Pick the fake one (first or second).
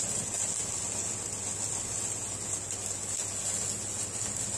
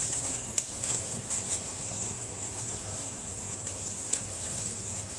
second